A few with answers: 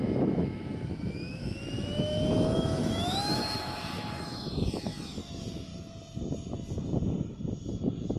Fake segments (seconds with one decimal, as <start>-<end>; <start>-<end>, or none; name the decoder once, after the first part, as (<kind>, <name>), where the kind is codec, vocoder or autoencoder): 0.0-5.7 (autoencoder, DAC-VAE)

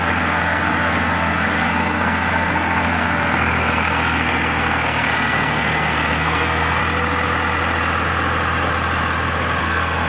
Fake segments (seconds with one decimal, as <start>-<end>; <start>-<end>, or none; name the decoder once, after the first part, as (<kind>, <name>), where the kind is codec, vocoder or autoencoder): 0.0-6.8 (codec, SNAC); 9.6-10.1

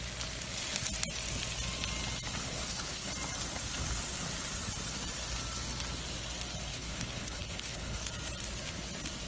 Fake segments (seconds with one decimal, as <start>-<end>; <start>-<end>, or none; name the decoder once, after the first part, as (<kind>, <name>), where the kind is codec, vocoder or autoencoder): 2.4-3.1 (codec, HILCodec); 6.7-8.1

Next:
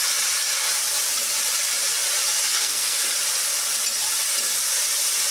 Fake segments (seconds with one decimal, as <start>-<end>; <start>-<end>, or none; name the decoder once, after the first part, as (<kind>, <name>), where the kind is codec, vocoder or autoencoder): 2.5-3.0 (codec, SNAC)